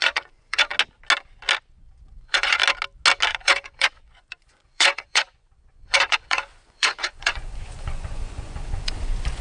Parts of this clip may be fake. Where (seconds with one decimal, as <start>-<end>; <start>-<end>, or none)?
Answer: 0.0-0.7; 1.6-2.6; 3.3-9.4